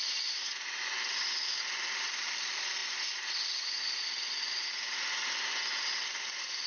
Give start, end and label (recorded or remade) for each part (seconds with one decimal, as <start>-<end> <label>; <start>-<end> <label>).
0.0-0.5 remade; 0.5-1.1 recorded; 1.1-2.8 remade; 2.8-4.7 recorded; 4.7-6.7 remade